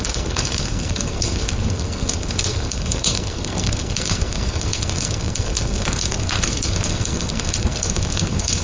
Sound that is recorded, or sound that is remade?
remade